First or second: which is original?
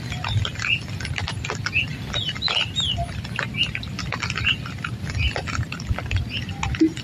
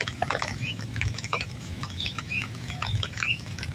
first